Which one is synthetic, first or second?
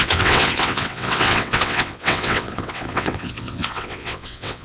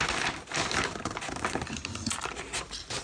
first